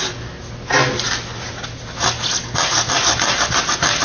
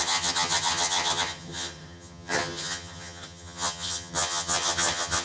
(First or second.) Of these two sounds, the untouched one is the first